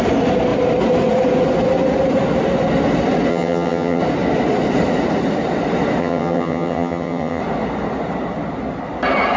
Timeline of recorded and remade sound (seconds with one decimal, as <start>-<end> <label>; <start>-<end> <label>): 0.0-3.3 recorded; 3.3-4.0 remade; 4.0-6.0 recorded; 6.0-7.4 remade; 7.4-9.4 recorded